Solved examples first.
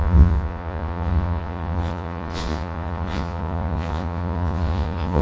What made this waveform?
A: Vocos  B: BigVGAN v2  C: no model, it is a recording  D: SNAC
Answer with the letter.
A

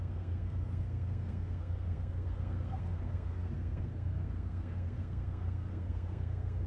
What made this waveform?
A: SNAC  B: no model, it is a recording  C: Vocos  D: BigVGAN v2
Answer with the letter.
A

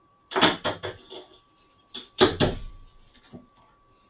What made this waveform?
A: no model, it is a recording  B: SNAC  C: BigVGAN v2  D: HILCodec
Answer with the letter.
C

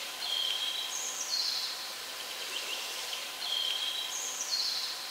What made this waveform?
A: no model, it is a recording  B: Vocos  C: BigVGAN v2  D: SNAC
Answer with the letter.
C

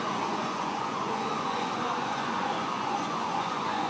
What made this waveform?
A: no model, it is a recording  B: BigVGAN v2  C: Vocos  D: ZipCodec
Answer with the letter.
C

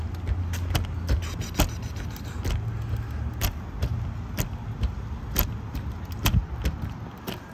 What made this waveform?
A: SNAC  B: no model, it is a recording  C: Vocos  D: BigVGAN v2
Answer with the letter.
B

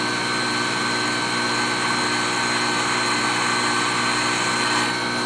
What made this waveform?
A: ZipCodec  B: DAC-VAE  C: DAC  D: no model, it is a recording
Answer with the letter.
D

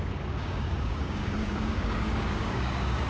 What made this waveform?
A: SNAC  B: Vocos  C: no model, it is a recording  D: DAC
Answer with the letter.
D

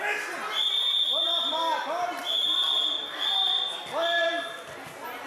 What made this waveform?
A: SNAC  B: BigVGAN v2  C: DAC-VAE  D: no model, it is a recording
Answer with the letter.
D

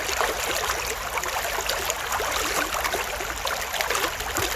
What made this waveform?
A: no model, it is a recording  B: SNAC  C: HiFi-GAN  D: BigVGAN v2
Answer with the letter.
A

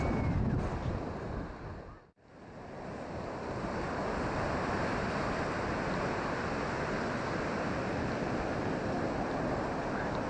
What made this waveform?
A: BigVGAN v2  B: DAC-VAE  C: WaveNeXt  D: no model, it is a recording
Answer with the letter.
D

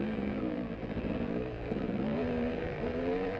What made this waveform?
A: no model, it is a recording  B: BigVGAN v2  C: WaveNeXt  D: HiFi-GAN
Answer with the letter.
B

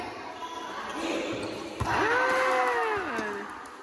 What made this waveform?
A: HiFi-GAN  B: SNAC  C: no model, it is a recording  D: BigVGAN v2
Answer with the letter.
C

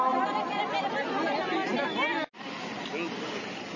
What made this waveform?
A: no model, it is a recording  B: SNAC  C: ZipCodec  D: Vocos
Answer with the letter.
A